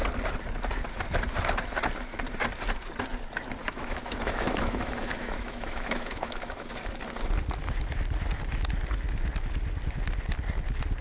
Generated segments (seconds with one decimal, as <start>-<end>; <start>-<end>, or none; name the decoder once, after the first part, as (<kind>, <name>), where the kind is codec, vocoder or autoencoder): 3.6-6.7 (autoencoder, DAC-VAE)

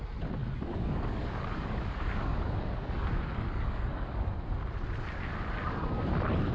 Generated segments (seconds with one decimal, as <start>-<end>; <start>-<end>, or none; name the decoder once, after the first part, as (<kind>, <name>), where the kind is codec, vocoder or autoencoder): 0.4-4.3 (codec, DAC)

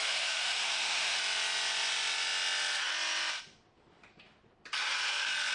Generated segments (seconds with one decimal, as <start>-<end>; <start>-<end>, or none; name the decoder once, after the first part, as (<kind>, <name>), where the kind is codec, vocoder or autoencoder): 0.0-1.2 (autoencoder, DAC-VAE)

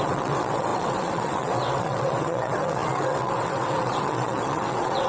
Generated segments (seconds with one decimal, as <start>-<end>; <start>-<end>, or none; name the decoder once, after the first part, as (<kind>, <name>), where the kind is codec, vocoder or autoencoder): 0.0-5.1 (vocoder, WaveNeXt)

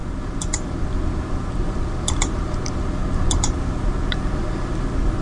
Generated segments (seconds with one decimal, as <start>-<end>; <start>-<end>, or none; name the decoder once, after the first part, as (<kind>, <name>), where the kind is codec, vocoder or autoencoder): none

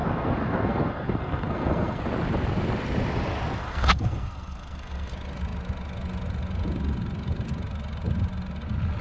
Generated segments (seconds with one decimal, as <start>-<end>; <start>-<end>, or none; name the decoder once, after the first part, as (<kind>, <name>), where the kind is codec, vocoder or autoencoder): 0.0-2.0 (codec, SNAC); 3.6-5.1

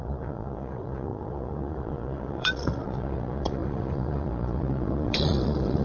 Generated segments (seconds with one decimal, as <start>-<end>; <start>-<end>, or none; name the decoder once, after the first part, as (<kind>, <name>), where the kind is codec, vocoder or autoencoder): 0.0-5.8 (vocoder, Vocos)